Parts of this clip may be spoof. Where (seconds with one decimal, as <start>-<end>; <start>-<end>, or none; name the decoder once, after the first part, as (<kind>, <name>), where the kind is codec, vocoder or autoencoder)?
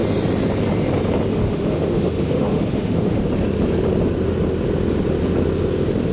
1.3-3.2 (autoencoder, DAC-VAE)